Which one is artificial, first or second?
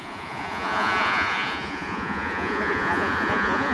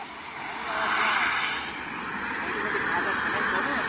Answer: first